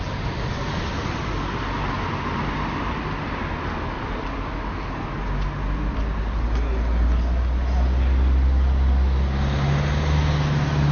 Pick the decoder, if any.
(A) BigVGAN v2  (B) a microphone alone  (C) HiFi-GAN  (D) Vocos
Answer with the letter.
B